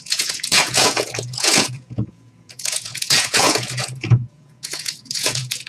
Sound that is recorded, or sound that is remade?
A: remade